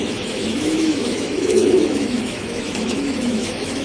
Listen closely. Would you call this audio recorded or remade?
remade